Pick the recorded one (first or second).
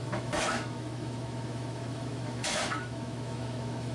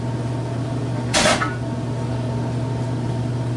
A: second